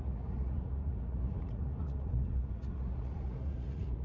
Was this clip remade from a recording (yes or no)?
yes